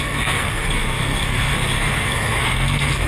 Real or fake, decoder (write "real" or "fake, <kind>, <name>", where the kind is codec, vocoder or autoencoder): fake, codec, SNAC